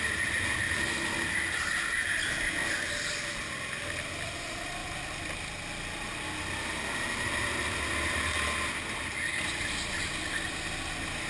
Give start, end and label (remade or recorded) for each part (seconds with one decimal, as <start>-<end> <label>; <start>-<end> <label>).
0.0-11.3 recorded